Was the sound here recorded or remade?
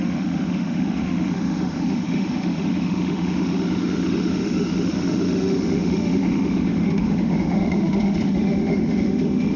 remade